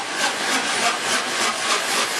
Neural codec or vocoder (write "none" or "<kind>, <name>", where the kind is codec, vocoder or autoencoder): vocoder, Vocos